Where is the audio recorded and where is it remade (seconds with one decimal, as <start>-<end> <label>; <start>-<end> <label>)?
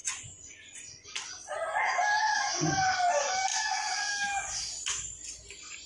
0.0-1.1 remade; 1.1-3.5 recorded; 3.5-4.1 remade; 4.1-5.9 recorded